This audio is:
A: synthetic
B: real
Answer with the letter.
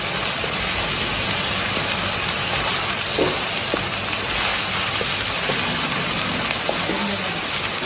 B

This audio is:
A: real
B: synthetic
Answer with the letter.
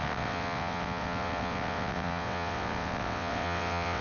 B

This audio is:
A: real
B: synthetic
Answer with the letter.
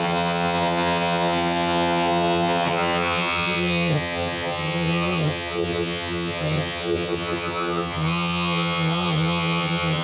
B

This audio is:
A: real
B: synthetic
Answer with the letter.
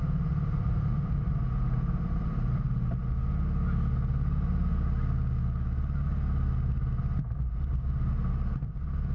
A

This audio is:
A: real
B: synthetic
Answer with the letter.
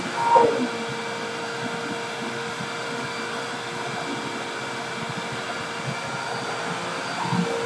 A